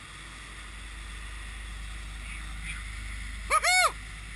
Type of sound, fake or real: real